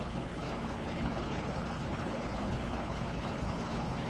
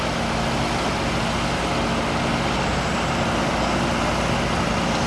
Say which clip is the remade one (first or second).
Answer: first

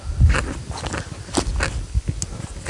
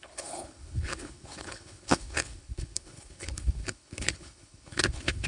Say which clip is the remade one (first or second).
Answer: second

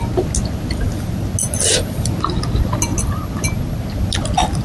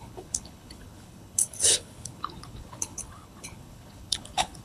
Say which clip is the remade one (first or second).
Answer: second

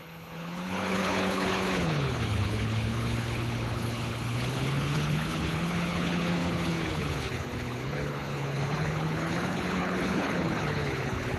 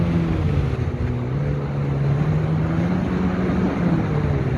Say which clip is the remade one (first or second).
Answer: first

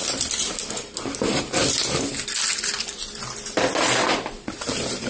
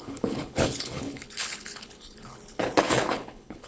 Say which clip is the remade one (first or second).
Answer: second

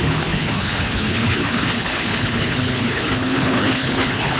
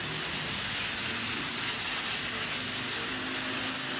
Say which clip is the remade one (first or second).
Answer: first